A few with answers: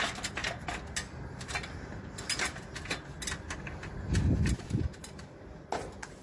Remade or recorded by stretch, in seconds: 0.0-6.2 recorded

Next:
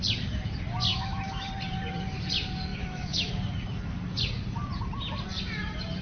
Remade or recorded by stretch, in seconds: 0.0-0.9 recorded; 0.9-1.5 remade; 1.5-2.7 recorded; 2.7-3.3 remade; 3.3-6.0 recorded

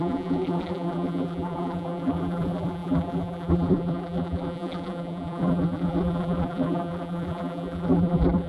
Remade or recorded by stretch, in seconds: 0.0-8.5 remade

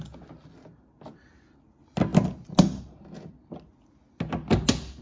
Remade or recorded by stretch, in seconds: 0.0-5.0 recorded